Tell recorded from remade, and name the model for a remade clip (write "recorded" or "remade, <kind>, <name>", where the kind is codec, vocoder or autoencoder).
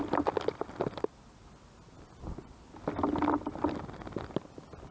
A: recorded